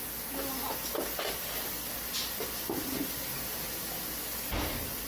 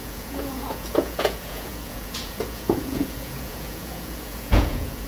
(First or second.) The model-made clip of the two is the second